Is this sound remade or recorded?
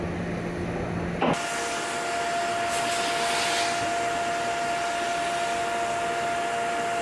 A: recorded